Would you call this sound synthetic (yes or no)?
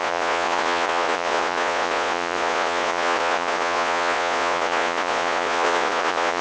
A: yes